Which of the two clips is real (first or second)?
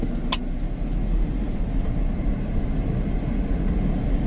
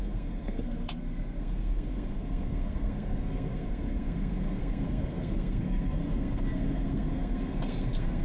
first